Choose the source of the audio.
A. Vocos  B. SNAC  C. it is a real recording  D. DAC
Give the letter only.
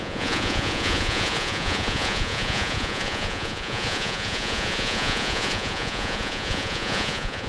A